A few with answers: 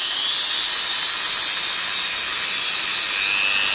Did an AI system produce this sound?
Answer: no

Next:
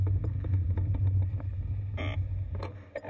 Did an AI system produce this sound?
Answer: no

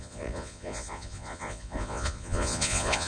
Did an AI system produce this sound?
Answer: yes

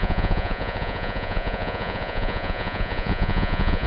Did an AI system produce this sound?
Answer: yes